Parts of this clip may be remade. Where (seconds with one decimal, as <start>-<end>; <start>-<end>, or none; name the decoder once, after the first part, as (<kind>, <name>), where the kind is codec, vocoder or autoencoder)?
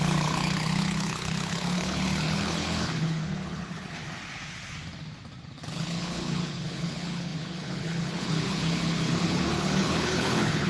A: 0.0-4.0 (codec, HILCodec); 5.4-10.7